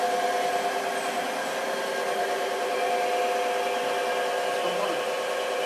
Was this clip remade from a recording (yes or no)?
no